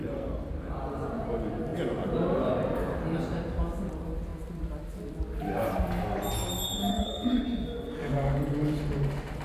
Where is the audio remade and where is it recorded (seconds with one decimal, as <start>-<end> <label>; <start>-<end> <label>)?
0.0-0.5 remade; 0.5-6.9 recorded; 6.9-7.4 remade; 7.4-9.4 recorded